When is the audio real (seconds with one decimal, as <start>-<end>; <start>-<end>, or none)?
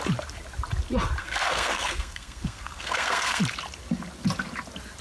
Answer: 0.0-1.2; 3.4-5.0